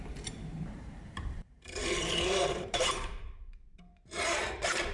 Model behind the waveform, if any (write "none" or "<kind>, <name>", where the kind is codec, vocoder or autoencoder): vocoder, BigVGAN v2